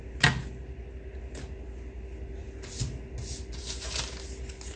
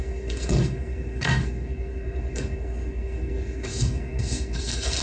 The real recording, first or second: first